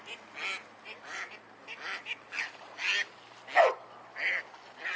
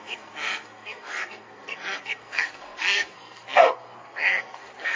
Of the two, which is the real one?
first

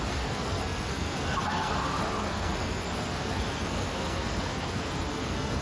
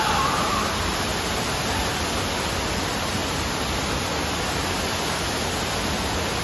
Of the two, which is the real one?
second